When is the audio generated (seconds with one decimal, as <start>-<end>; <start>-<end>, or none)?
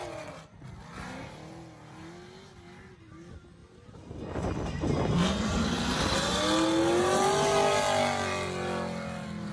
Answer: none